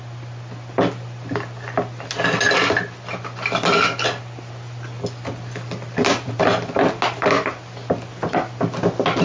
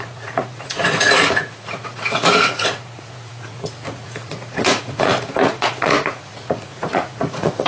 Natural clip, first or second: first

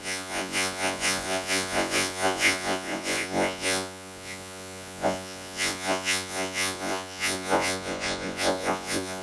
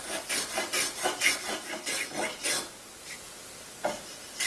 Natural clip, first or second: second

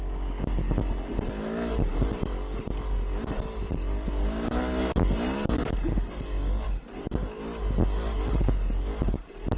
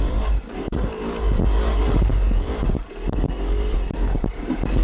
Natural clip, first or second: first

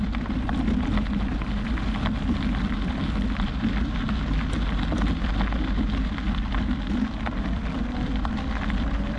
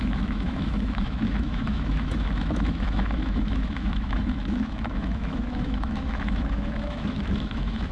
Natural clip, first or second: first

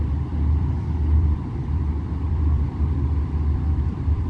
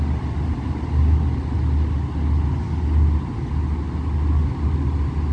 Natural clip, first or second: second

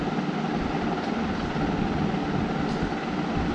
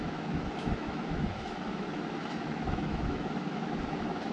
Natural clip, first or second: first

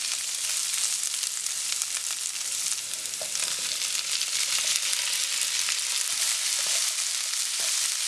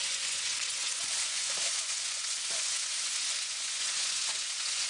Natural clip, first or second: first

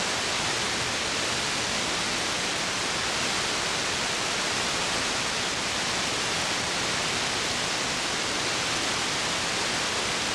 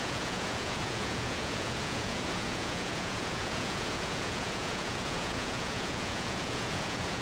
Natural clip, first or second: first